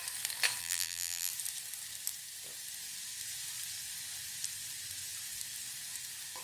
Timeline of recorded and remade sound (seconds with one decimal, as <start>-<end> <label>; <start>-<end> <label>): 0.0-0.6 recorded; 0.6-1.3 remade; 1.3-6.4 recorded